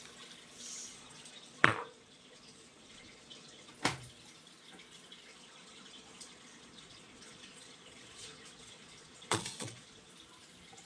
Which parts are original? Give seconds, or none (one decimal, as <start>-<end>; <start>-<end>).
0.0-0.9; 3.7-5.3; 10.1-10.9